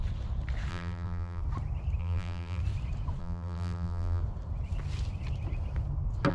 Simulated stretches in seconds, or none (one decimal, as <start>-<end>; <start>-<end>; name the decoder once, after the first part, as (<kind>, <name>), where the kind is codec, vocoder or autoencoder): 0.7-1.4 (vocoder, BigVGAN v2); 2.0-2.6; 3.2-4.2